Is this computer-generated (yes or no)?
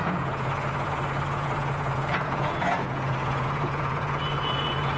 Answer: yes